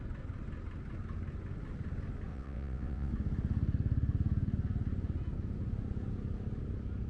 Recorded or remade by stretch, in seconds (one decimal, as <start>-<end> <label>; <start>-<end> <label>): 0.0-2.3 recorded; 2.3-3.1 remade; 3.1-7.1 recorded